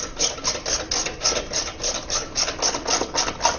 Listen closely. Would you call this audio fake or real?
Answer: real